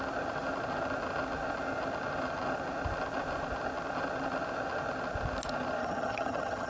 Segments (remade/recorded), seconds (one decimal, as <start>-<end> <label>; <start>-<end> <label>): 0.0-5.8 recorded; 5.8-6.7 remade